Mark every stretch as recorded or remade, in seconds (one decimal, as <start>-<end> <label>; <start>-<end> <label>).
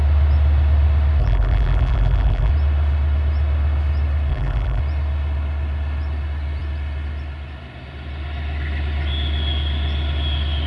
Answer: 0.0-1.2 recorded; 1.2-2.5 remade; 2.5-4.3 recorded; 4.3-4.8 remade; 4.8-10.7 recorded